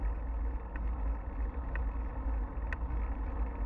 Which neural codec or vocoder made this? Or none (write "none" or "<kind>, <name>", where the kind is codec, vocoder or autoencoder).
none